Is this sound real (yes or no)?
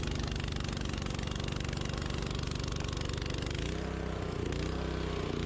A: yes